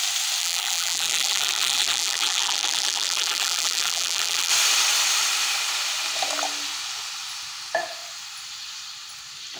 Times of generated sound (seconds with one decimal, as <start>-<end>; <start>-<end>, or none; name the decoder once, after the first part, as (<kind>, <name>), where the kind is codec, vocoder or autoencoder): 0.4-4.5 (vocoder, BigVGAN v2)